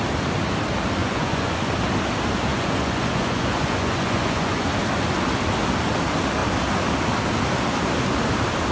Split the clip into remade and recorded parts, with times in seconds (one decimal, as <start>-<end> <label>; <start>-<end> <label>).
0.0-1.0 recorded; 1.0-1.7 remade; 1.7-2.5 recorded; 2.5-4.7 remade; 4.7-8.7 recorded